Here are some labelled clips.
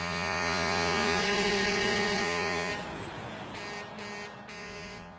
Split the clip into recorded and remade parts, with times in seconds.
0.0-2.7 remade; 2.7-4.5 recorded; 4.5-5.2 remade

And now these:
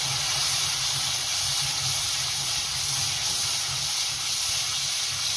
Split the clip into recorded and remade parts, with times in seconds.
0.0-5.4 recorded

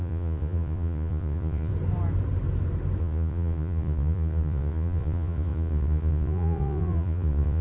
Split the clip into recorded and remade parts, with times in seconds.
0.0-1.7 remade; 1.7-3.0 recorded; 3.0-7.6 remade